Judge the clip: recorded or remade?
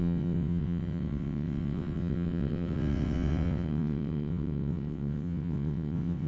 remade